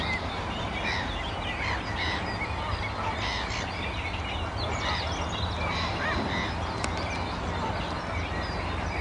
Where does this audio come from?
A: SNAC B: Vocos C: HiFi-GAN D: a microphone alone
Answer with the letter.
D